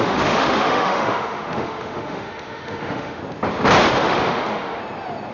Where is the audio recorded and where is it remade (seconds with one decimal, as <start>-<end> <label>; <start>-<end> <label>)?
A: 0.0-3.2 remade; 3.2-3.9 recorded; 3.9-4.8 remade; 4.8-5.3 recorded

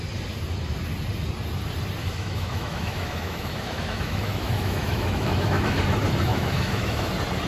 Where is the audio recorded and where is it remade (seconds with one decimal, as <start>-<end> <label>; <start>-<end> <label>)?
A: 0.0-2.0 recorded; 2.0-5.8 remade; 5.8-6.3 recorded; 6.3-7.1 remade; 7.1-7.5 recorded

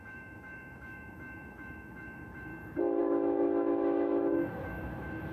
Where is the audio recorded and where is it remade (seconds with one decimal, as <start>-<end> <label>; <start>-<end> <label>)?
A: 0.0-2.5 remade; 2.5-3.0 recorded; 3.0-5.3 remade

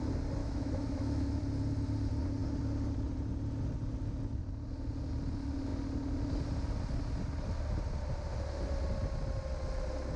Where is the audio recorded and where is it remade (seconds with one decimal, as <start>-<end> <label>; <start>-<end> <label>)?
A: 0.0-0.4 recorded; 0.4-1.4 remade; 1.4-10.2 recorded

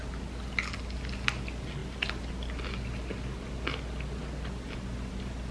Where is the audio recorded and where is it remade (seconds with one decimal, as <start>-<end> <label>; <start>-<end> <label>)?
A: 0.0-5.5 recorded

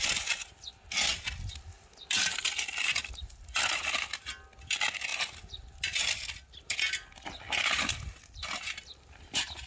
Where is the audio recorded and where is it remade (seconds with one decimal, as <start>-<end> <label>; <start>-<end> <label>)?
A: 0.0-9.7 recorded

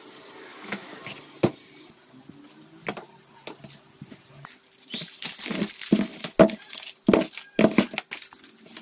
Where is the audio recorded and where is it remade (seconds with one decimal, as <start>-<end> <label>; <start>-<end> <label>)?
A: 0.0-0.5 recorded; 0.5-1.0 remade; 1.0-8.8 recorded